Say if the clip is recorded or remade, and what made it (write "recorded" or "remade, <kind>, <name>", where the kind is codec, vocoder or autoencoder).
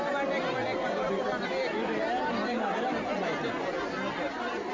recorded